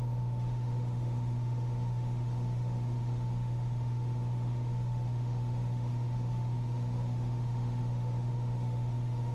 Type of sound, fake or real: fake